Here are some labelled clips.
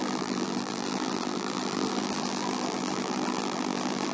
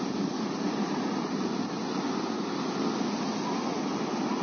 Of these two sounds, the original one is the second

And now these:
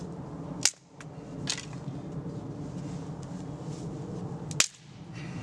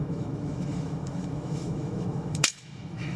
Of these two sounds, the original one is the first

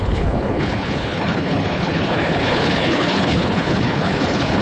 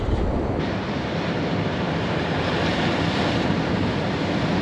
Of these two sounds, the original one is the second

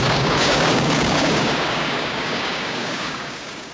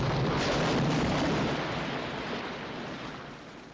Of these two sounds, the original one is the second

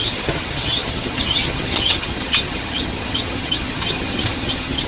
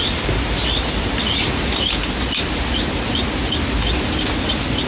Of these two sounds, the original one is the second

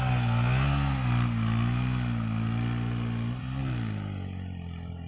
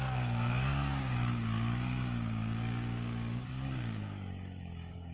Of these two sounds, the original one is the first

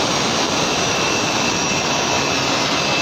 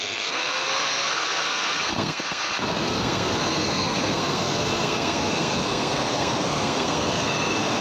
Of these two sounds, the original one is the first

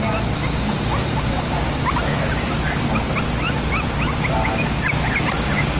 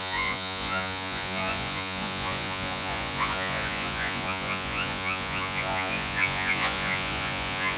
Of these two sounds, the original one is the first